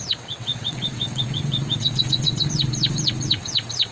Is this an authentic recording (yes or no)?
no